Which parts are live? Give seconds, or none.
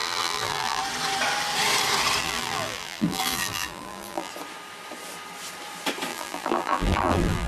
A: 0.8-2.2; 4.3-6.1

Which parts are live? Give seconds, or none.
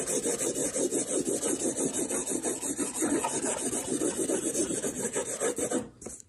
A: 0.6-4.4; 5.2-5.7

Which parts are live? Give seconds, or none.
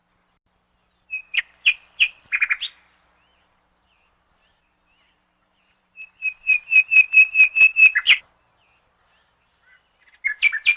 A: 0.0-3.3; 6.8-10.8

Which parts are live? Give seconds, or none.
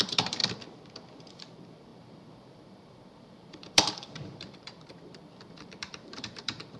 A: 0.4-1.3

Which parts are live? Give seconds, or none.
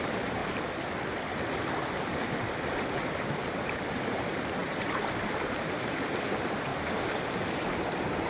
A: 0.4-3.5; 6.7-8.3